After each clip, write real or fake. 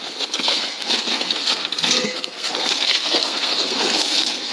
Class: fake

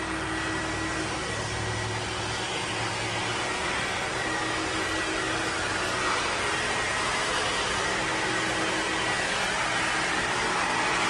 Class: real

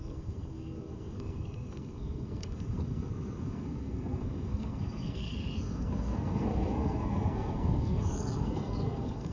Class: fake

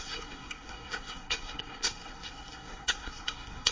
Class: fake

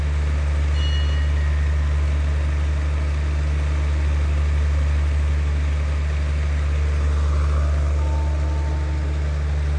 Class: real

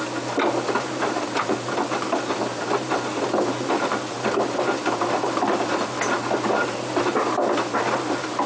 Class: real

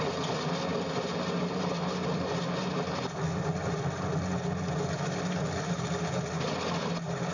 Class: real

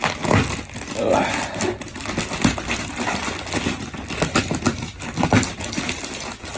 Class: real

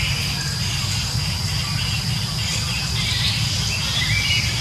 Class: real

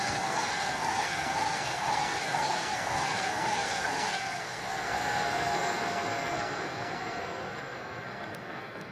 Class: fake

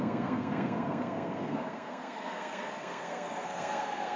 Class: fake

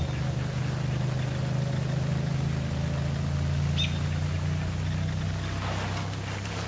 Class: real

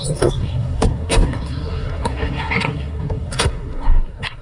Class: fake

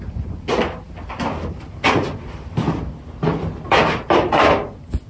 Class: real